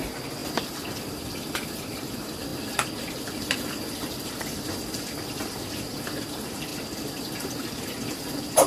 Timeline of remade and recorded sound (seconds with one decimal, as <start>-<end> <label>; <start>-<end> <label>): 0.0-0.4 remade; 0.4-1.0 recorded; 1.0-6.7 remade; 6.7-7.8 recorded; 7.8-8.7 remade